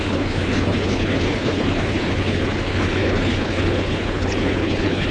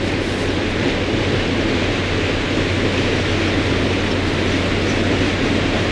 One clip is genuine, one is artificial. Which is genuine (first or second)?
second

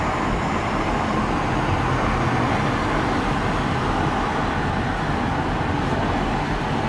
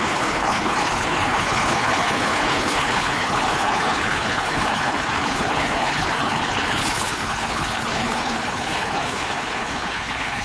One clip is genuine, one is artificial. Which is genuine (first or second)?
first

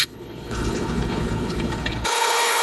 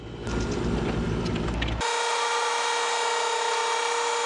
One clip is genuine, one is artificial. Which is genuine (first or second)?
second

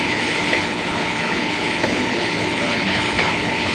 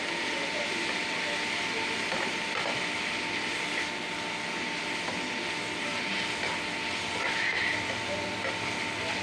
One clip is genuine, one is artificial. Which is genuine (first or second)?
second